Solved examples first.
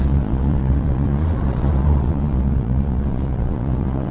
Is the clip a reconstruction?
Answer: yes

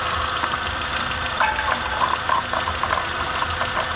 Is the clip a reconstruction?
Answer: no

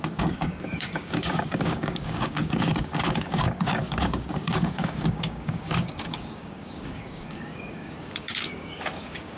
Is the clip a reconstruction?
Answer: yes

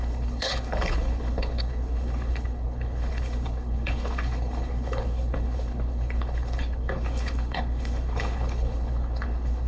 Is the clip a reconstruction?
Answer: yes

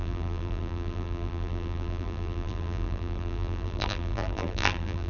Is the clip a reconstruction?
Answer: yes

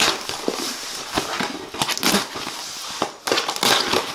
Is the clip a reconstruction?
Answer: no